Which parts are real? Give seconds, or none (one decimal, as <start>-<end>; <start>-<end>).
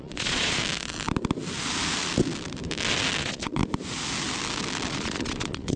0.6-3.2; 3.6-4.9